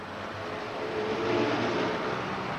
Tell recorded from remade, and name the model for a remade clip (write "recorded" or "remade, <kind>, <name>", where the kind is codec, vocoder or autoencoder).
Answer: recorded